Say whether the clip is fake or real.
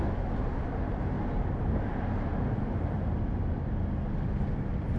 real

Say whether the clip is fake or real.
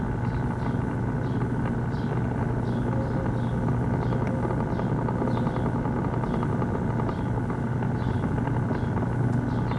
real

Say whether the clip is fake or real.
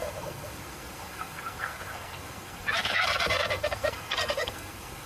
fake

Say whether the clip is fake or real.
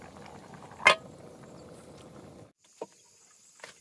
real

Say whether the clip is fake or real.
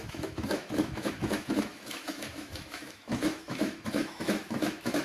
fake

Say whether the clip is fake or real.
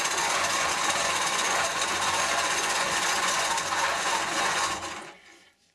fake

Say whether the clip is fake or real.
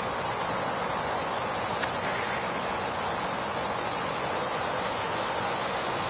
fake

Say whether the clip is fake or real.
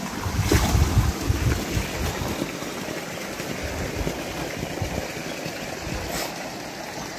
real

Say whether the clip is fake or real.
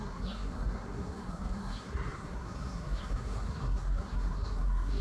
fake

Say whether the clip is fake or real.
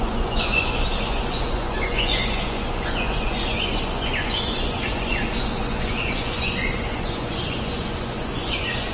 fake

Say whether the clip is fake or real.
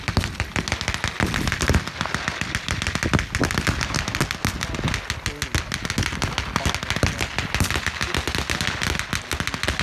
real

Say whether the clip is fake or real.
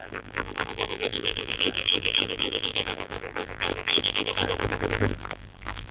fake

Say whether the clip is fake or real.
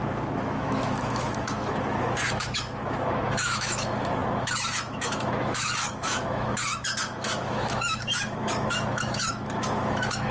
fake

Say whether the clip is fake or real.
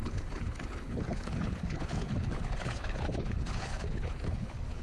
fake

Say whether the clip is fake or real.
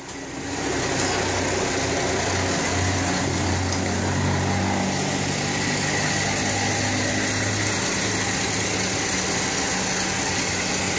real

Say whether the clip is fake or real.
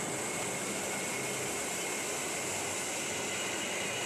real